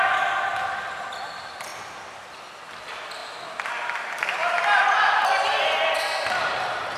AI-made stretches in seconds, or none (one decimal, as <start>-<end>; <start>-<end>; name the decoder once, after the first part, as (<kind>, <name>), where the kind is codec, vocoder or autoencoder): 0.0-1.7 (vocoder, BigVGAN v2); 2.7-3.2; 3.7-7.0